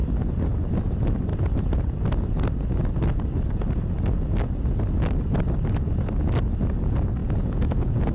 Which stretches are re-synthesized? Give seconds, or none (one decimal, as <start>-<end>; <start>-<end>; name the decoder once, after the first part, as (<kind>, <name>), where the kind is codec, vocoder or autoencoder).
7.2-8.1 (vocoder, Vocos)